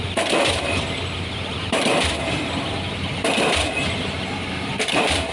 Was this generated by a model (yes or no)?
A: yes